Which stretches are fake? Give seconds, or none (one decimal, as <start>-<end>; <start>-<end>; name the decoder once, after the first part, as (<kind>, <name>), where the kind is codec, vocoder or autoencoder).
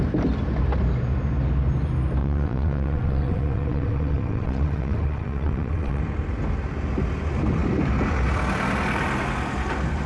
2.2-6.0 (vocoder, WaveNeXt)